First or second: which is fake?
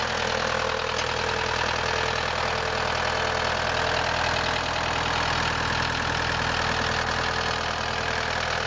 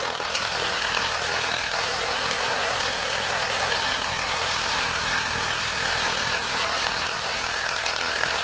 second